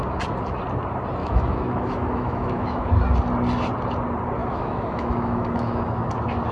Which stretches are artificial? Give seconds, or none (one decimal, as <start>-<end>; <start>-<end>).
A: 1.2-2.9; 4.4-5.8